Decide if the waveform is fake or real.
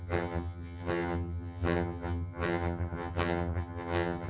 fake